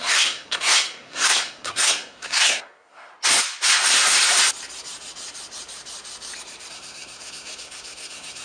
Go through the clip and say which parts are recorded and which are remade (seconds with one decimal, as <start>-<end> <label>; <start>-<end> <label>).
0.0-3.1 remade; 3.1-6.7 recorded; 6.7-8.4 remade

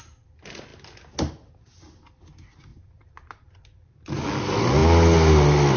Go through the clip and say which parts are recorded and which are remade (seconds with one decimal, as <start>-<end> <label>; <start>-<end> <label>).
0.0-2.7 recorded; 2.7-4.2 remade; 4.2-5.8 recorded